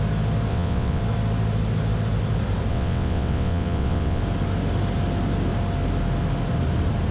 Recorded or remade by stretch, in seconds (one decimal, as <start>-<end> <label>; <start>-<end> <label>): 0.0-0.5 recorded; 0.5-1.0 remade; 1.0-2.7 recorded; 2.7-4.2 remade; 4.2-7.1 recorded